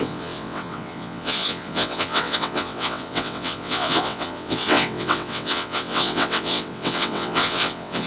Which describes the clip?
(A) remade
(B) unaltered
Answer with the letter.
A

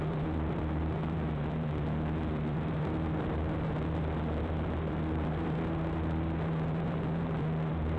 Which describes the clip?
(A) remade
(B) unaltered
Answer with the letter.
A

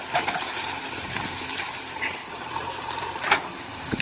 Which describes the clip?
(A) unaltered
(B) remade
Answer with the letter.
B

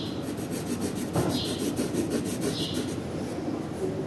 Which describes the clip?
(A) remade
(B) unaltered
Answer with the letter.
B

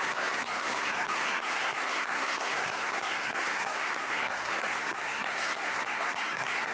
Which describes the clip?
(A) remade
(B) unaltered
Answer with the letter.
A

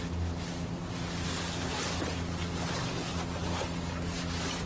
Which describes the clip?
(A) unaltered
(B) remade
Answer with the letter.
A